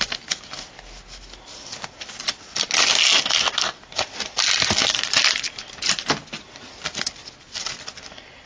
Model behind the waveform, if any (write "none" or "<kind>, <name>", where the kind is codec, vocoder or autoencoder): none